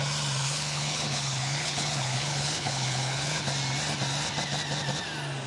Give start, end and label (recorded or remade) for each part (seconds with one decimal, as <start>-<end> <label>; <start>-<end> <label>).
0.0-0.4 recorded; 0.4-3.5 remade; 3.5-5.5 recorded